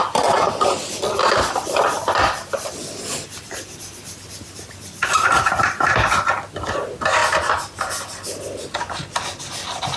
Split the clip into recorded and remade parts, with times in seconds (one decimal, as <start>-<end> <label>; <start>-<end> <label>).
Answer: 0.0-10.0 recorded